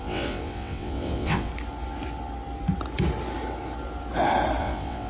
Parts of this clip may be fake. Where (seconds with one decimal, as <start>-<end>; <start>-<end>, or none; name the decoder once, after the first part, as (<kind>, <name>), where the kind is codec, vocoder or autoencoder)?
0.0-1.5 (vocoder, WaveNeXt); 4.6-5.1